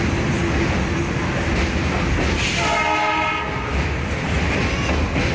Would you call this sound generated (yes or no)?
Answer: no